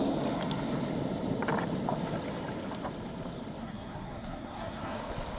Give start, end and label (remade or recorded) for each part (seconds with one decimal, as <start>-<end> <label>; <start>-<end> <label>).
0.0-3.6 recorded; 3.6-5.0 remade; 5.0-5.4 recorded